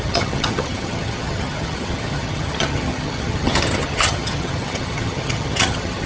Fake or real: fake